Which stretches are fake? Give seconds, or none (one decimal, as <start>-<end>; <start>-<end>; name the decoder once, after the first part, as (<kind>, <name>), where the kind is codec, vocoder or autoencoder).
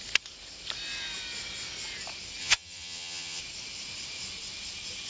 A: 2.4-3.4 (vocoder, HiFi-GAN)